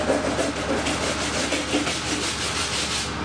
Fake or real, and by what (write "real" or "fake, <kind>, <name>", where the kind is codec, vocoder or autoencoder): real